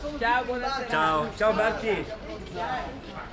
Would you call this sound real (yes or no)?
yes